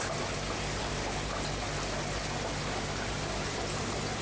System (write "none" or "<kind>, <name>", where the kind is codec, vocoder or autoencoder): none